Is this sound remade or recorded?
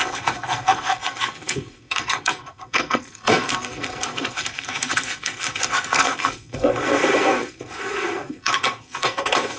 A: remade